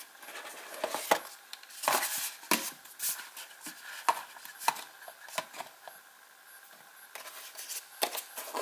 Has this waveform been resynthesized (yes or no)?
no